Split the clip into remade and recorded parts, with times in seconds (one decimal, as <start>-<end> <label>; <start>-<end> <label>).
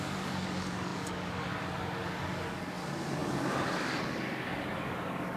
0.0-5.4 remade